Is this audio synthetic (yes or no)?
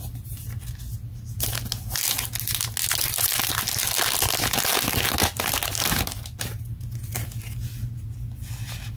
no